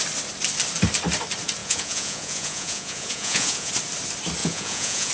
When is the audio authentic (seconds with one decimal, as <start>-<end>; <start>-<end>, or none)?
0.0-1.6; 3.7-4.4